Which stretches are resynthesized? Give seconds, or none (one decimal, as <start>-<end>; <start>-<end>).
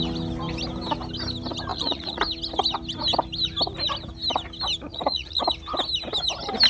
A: 1.7-2.2; 4.9-5.4